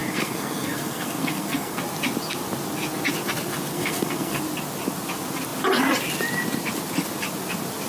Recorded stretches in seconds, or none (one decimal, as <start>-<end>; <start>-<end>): 1.8-3.7; 4.4-7.9